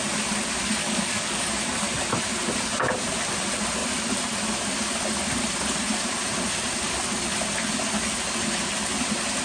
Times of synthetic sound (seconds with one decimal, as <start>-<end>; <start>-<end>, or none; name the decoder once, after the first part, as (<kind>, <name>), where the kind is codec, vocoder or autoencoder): 0.8-1.6 (codec, DAC)